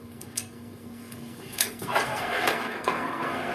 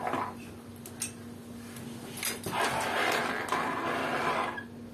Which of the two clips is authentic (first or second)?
second